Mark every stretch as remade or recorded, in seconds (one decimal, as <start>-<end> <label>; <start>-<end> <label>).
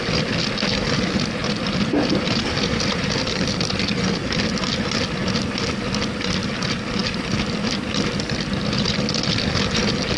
0.0-1.4 recorded; 1.4-4.7 remade; 4.7-10.2 recorded